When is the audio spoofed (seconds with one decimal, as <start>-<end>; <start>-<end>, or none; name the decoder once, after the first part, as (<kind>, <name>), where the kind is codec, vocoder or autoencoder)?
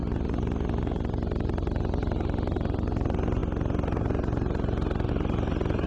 none